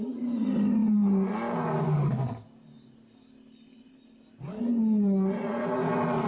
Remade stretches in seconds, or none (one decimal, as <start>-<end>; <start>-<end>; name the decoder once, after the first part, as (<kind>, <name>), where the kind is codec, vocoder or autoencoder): none